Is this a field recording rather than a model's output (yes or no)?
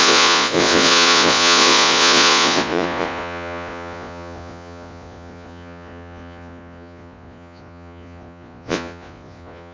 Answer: no